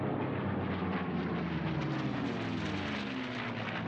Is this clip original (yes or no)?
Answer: yes